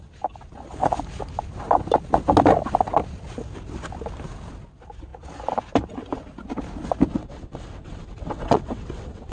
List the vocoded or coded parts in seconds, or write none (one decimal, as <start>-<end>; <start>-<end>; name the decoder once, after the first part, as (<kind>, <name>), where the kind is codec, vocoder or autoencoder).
7.1-9.3 (vocoder, WaveNeXt)